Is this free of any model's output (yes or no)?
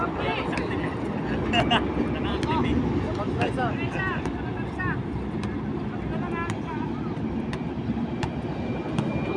yes